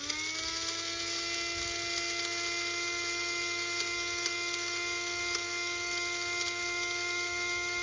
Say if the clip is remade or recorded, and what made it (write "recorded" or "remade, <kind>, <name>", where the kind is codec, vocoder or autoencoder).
recorded